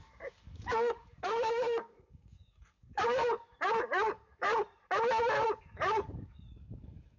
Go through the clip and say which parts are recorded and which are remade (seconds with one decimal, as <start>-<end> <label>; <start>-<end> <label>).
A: 0.0-4.5 remade; 4.5-5.6 recorded; 5.6-7.2 remade